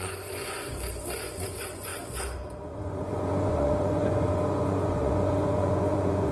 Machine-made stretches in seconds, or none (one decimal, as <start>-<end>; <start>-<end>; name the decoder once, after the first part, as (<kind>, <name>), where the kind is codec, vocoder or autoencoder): 0.0-6.3 (vocoder, Vocos)